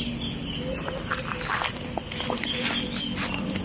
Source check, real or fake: real